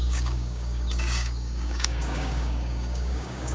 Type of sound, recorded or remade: remade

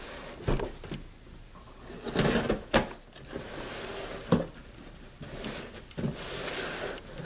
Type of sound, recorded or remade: recorded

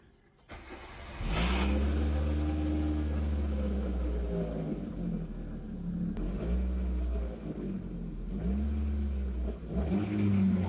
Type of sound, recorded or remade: recorded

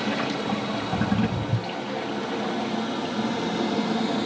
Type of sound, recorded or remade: recorded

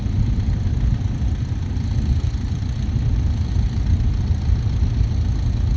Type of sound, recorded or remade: recorded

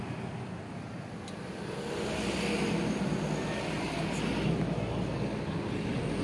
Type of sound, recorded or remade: recorded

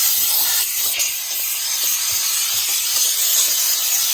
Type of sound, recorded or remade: recorded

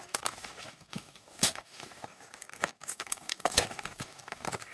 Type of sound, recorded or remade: remade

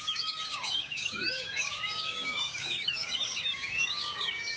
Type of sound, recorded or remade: remade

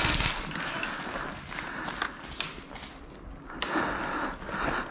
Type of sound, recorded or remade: recorded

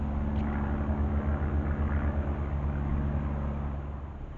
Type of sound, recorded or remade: recorded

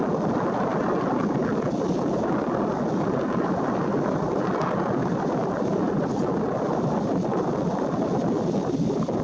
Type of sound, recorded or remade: recorded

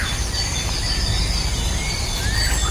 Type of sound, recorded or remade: recorded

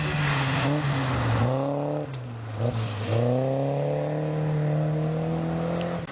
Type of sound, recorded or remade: recorded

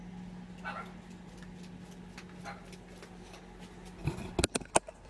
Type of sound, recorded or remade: recorded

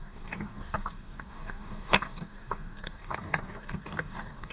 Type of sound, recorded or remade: remade